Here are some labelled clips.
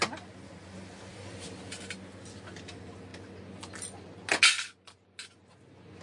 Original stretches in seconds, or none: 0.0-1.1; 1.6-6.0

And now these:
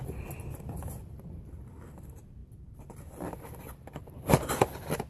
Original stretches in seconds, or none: 0.0-5.1